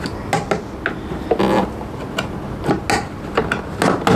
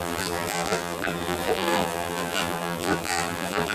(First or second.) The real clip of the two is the first